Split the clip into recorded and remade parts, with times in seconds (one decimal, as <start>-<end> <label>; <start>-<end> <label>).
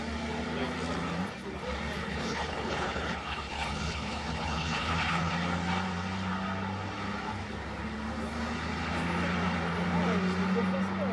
0.0-2.0 recorded; 2.0-5.3 remade; 5.3-11.1 recorded